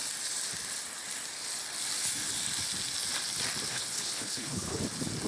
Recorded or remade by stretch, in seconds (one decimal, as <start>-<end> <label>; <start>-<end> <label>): 0.0-3.7 recorded; 3.7-4.8 remade; 4.8-5.3 recorded